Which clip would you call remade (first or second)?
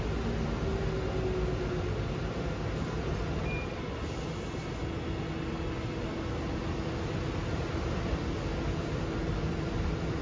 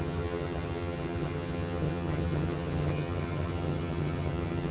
second